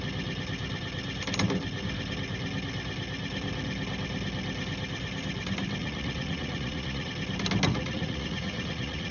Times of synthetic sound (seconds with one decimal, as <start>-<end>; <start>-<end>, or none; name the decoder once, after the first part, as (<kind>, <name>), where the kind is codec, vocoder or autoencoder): 5.8-7.1 (vocoder, Vocos); 7.7-9.1